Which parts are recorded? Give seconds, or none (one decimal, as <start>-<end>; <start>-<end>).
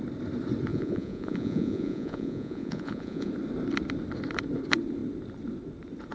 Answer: 0.0-0.7; 3.3-6.1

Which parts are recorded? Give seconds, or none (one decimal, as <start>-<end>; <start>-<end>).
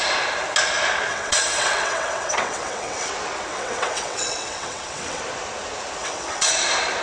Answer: 0.0-1.1; 3.1-3.5; 5.2-6.0; 6.5-7.0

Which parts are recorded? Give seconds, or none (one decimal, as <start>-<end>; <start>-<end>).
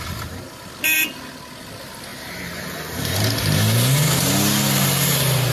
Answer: 0.0-2.1; 3.6-5.5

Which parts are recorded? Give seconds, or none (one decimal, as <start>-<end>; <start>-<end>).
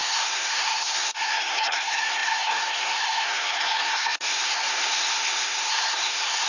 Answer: none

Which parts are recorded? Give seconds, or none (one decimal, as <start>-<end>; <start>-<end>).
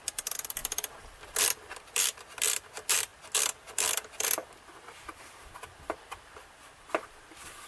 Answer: 3.1-4.0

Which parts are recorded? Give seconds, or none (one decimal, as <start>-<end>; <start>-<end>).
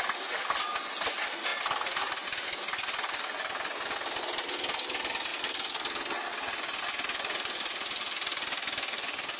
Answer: 0.0-9.4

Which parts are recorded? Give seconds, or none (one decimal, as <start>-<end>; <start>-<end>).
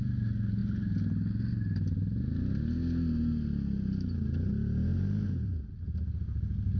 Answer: 0.0-6.8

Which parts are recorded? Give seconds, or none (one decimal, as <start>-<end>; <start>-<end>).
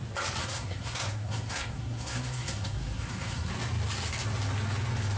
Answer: 0.0-0.4; 3.5-5.2